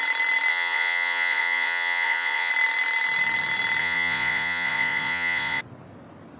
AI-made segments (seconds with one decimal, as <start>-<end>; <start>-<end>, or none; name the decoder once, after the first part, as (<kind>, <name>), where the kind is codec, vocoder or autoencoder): 0.5-2.5 (vocoder, Vocos); 3.8-5.6